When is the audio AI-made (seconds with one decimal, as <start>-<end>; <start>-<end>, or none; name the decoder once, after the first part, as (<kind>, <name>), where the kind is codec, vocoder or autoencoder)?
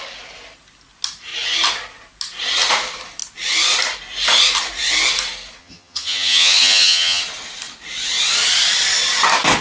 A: 5.6-7.2 (vocoder, HiFi-GAN)